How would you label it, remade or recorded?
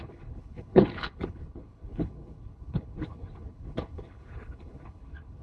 remade